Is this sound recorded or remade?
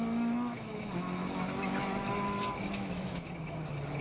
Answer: remade